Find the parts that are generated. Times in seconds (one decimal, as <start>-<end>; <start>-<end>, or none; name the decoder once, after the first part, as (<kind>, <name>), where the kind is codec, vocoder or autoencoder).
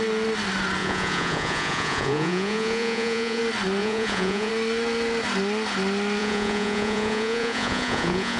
0.8-3.4 (vocoder, Vocos); 3.8-4.5; 6.2-8.4